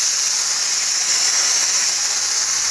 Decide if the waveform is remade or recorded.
recorded